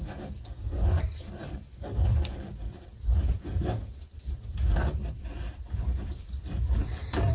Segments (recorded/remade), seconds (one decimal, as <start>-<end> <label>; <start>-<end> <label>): 0.0-7.3 remade

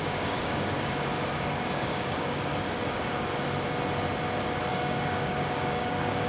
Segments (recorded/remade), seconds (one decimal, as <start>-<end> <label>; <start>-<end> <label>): 0.0-3.3 remade; 3.3-4.7 recorded; 4.7-6.3 remade